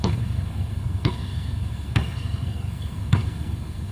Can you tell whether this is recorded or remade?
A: remade